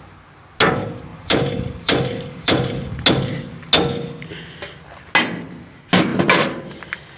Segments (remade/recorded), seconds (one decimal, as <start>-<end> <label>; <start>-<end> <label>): 0.0-1.1 recorded; 1.1-2.9 remade; 2.9-7.2 recorded